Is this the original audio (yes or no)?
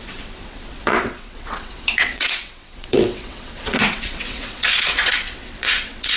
no